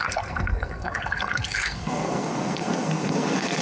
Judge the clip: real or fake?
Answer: fake